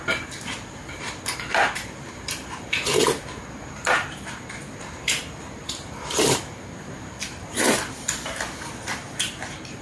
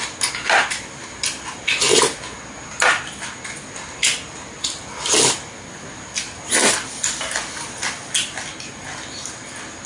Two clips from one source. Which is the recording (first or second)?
second